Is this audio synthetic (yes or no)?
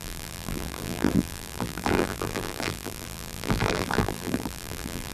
yes